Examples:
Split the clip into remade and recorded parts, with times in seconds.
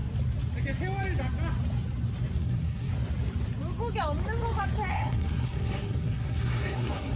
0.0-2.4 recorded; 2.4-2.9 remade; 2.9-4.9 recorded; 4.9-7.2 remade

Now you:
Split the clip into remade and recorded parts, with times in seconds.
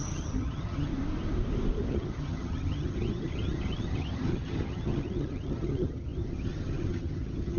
0.0-0.9 remade; 0.9-1.9 recorded; 1.9-7.6 remade